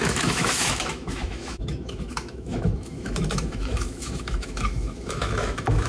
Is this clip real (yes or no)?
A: no